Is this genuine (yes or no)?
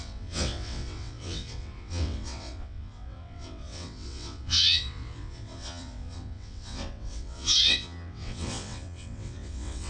no